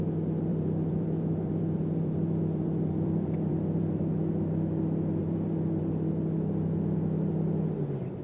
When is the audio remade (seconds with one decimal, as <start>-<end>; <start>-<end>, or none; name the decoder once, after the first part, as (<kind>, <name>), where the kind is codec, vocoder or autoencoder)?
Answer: 0.5-4.1 (vocoder, BigVGAN v2); 5.2-6.1